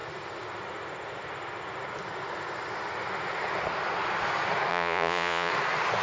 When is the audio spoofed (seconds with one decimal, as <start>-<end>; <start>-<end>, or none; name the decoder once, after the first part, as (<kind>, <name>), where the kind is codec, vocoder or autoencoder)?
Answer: 4.7-5.5 (vocoder, Vocos)